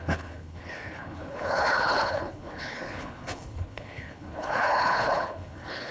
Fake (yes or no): yes